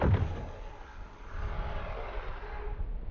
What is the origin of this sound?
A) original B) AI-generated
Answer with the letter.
A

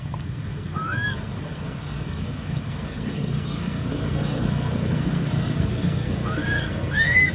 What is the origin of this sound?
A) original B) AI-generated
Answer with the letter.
B